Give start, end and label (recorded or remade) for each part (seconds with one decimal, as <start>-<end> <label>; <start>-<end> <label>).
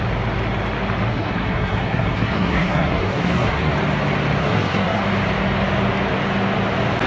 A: 0.0-1.1 recorded; 1.1-3.7 remade; 3.7-4.4 recorded; 4.4-5.0 remade; 5.0-7.1 recorded